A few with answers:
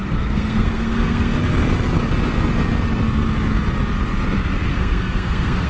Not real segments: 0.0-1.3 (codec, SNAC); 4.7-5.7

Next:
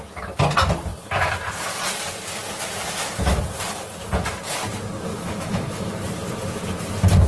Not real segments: 5.1-5.9 (autoencoder, DAC-VAE)

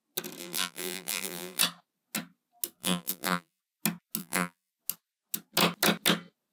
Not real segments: 0.4-1.6 (vocoder, BigVGAN v2); 2.8-3.6; 4.2-4.7